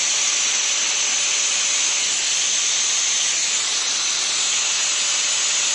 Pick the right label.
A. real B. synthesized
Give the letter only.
A